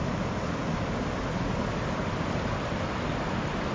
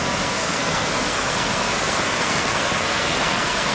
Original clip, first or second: first